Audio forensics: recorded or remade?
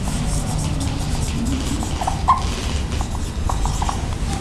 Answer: recorded